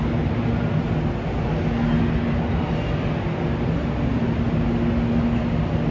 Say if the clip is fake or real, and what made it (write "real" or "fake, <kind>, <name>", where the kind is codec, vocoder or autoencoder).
real